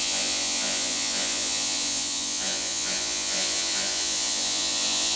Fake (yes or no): yes